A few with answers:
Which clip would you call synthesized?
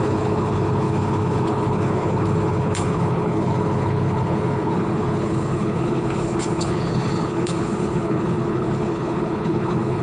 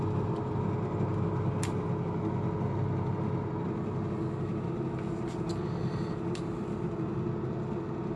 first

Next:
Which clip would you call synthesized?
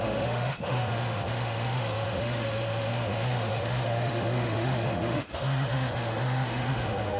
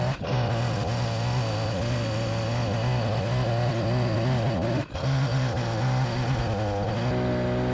first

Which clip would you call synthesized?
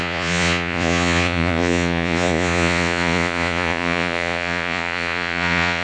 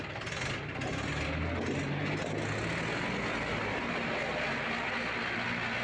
first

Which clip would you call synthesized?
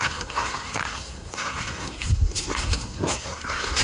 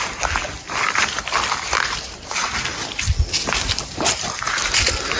first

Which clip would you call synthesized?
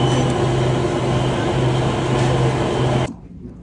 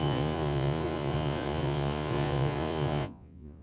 second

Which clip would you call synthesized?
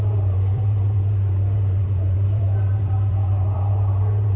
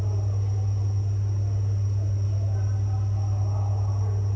first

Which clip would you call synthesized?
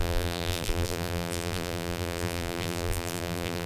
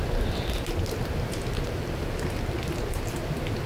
first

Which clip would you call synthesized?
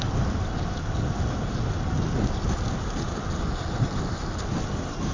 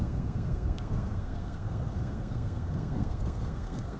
second